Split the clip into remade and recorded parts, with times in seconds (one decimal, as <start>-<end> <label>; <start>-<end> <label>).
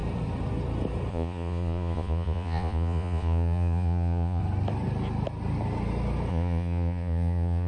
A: 0.0-1.1 recorded; 1.1-4.4 remade; 4.4-6.3 recorded; 6.3-7.7 remade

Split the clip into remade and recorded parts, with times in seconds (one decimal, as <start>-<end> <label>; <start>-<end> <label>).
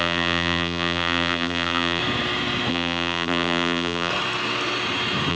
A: 0.0-2.0 remade; 2.0-2.7 recorded; 2.7-4.1 remade; 4.1-5.3 recorded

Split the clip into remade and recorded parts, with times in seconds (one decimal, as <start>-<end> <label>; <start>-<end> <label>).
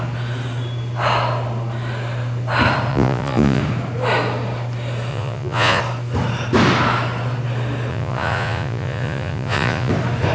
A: 0.0-2.9 recorded; 2.9-3.6 remade; 3.6-5.1 recorded; 5.1-5.8 remade; 5.8-7.9 recorded; 7.9-9.9 remade; 9.9-10.3 recorded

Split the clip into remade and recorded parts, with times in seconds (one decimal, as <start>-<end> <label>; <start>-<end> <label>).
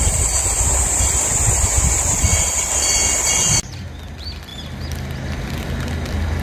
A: 0.0-6.4 recorded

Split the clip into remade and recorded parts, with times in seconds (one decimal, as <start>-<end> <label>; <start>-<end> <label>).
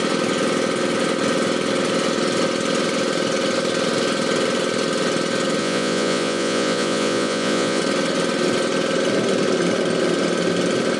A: 0.0-5.6 recorded; 5.6-7.8 remade; 7.8-11.0 recorded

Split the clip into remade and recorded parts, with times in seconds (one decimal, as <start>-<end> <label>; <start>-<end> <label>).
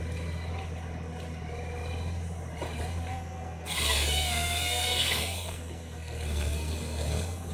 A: 0.0-3.1 recorded; 3.1-7.5 remade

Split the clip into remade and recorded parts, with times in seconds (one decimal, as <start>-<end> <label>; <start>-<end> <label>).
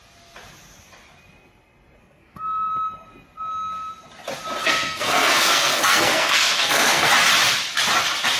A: 0.0-2.0 recorded; 2.0-2.7 remade; 2.7-4.6 recorded; 4.6-7.1 remade; 7.1-8.4 recorded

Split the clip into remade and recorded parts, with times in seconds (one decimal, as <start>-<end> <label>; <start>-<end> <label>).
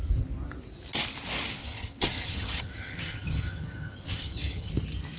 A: 0.0-1.6 recorded; 1.6-4.7 remade; 4.7-5.2 recorded